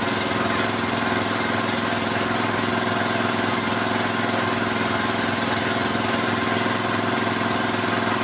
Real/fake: real